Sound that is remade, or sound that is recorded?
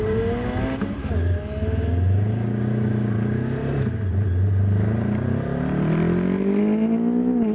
recorded